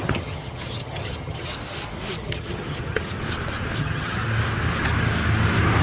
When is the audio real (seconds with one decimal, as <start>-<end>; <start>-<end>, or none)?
1.5-2.2; 3.2-3.8; 4.2-5.8